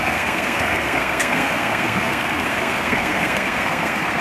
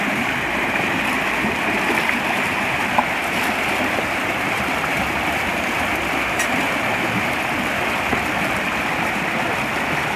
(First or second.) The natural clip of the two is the second